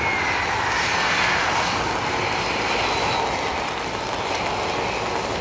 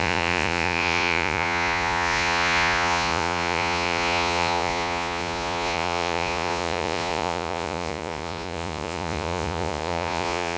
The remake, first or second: second